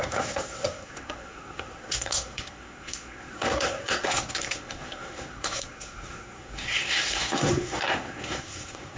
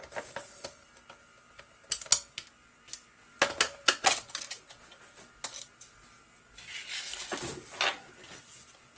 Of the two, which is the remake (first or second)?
first